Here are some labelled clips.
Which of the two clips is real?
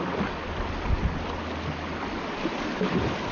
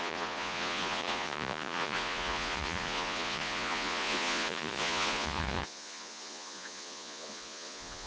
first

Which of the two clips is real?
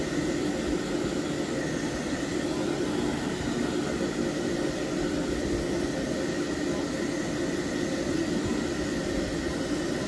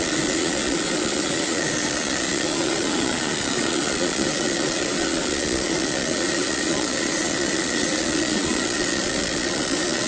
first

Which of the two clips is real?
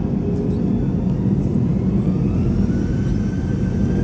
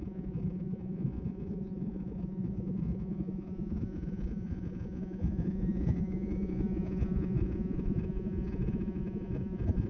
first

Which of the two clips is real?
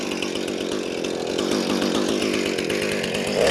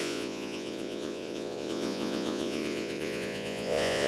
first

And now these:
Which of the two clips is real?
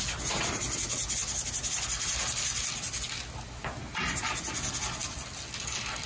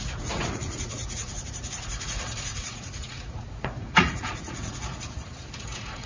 first